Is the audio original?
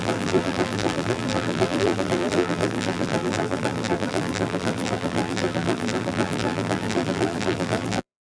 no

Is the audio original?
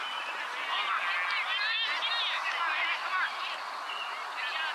yes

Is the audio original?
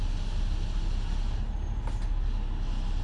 yes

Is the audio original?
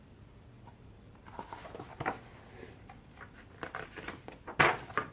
yes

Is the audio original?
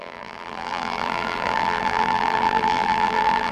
no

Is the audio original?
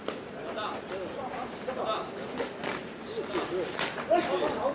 yes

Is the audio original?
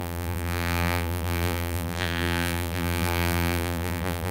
no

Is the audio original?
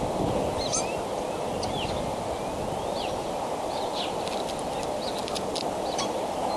yes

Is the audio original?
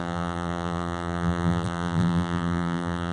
no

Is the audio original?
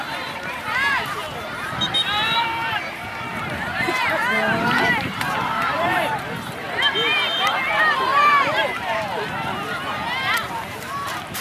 no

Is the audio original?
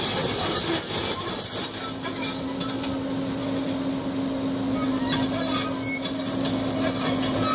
yes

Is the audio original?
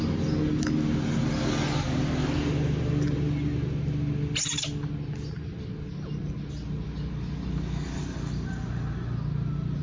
yes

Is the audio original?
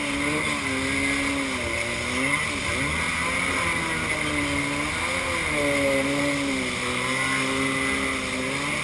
yes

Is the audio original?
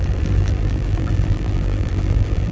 no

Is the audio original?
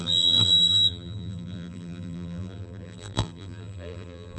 no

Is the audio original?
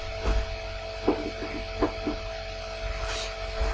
yes